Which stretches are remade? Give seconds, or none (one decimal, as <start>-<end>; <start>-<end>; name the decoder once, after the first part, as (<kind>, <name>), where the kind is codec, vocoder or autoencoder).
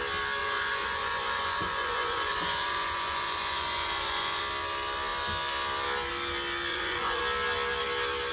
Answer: 0.4-4.4 (vocoder, Vocos); 6.7-7.2